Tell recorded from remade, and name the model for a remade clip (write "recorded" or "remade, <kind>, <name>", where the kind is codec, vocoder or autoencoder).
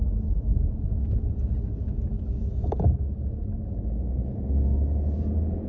recorded